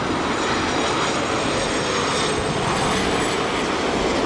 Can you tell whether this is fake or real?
real